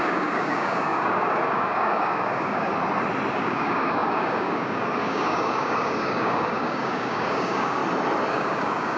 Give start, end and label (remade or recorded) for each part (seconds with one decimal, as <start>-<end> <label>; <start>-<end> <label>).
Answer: 0.0-2.7 remade; 2.7-3.3 recorded; 3.3-7.8 remade; 7.8-8.3 recorded; 8.3-9.0 remade